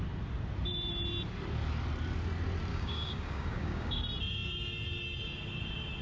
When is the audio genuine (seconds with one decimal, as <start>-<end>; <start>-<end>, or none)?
0.0-2.7; 4.0-6.0